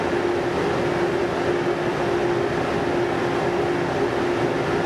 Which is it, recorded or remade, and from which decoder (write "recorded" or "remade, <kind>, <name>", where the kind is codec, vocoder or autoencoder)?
recorded